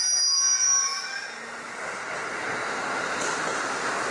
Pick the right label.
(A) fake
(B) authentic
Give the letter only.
B